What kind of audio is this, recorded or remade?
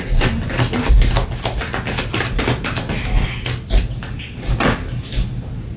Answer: recorded